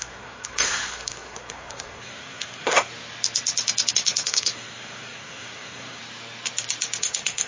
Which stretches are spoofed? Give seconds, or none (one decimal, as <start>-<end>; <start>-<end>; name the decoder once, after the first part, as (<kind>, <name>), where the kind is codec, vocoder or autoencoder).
0.0-2.9 (codec, SNAC); 3.9-6.0; 7.0-7.5